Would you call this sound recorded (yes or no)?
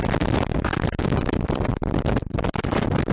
yes